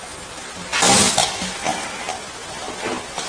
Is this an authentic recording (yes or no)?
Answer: yes